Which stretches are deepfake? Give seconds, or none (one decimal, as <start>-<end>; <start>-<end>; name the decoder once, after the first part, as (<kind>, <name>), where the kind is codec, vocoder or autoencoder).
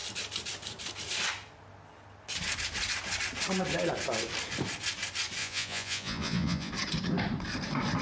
5.4-6.7 (vocoder, Vocos)